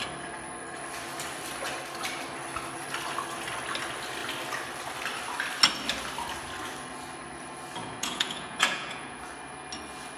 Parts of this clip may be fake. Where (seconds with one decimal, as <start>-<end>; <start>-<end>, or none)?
7.8-9.2